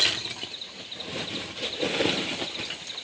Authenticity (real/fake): real